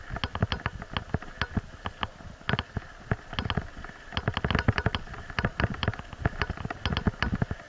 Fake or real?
real